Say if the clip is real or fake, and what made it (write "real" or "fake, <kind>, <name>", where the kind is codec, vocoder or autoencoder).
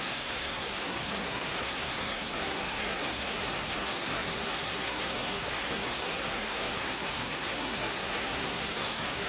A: fake, codec, SNAC